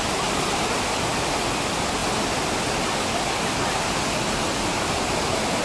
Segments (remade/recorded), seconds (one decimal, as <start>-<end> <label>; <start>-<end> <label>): 0.0-5.6 recorded